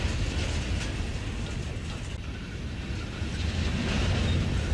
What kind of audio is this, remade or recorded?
recorded